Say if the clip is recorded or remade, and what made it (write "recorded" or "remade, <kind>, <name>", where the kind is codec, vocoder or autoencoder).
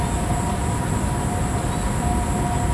recorded